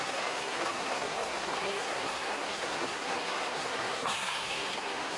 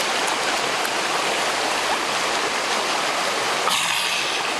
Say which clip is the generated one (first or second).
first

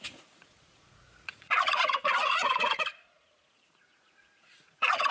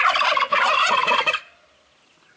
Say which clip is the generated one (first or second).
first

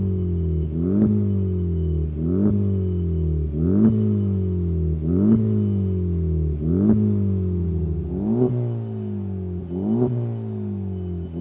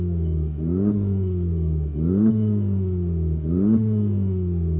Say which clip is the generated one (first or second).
second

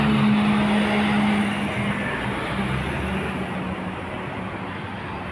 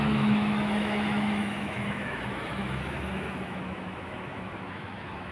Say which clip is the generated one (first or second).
second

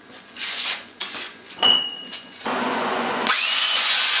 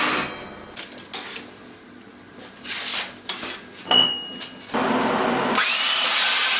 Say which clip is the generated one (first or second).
first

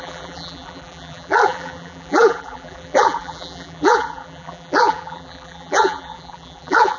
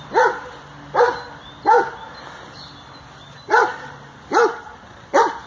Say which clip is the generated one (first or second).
first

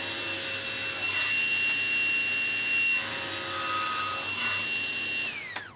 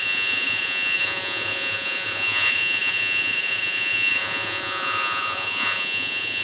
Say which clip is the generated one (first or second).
second